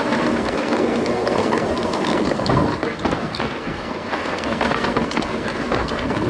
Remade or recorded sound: remade